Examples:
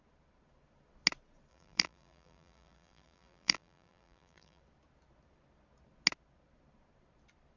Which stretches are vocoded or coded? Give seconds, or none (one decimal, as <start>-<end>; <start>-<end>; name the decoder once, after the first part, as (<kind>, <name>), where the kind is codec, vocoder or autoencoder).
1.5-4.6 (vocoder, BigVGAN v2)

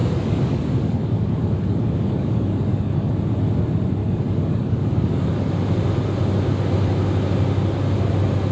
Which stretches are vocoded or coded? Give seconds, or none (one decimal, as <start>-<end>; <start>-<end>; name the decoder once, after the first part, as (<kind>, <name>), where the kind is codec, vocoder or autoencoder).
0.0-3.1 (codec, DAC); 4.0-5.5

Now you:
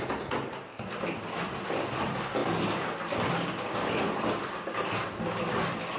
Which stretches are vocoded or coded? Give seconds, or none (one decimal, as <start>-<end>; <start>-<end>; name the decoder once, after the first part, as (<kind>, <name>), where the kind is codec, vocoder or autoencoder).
none

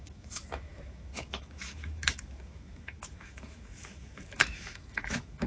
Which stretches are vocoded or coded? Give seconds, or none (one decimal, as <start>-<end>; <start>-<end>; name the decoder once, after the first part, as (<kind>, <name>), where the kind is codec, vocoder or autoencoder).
0.0-5.5 (autoencoder, DAC-VAE)

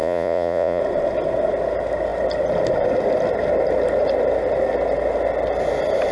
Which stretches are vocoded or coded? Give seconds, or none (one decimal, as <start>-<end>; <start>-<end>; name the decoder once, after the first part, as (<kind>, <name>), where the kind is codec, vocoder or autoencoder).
0.0-0.8 (vocoder, Vocos)

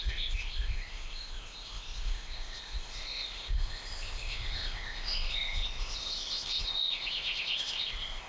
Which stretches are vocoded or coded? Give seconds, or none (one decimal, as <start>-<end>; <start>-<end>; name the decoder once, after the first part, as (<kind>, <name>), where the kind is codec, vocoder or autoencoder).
0.0-8.3 (codec, ZipCodec)